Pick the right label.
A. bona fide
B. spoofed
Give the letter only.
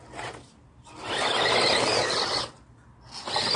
A